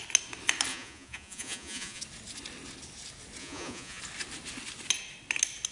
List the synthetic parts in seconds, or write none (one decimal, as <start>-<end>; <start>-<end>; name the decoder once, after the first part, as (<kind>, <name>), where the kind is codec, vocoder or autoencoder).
0.7-2.0 (vocoder, Vocos); 3.4-4.0